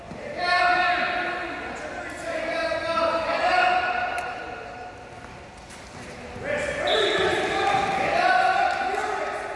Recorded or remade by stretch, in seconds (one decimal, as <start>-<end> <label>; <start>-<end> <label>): 0.0-3.4 recorded; 3.4-4.4 remade; 4.4-9.6 recorded